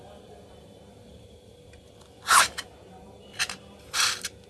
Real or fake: fake